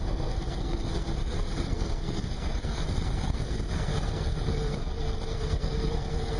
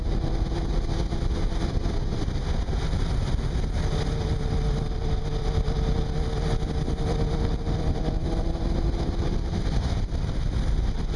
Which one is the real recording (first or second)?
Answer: second